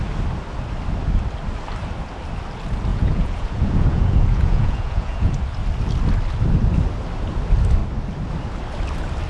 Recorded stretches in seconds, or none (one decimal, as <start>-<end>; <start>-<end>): 0.0-2.9; 5.3-9.3